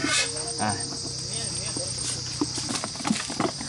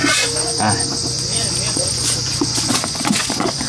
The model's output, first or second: second